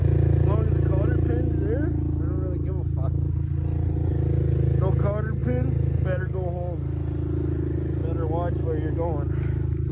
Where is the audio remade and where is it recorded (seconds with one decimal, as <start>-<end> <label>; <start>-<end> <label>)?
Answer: 0.0-9.9 recorded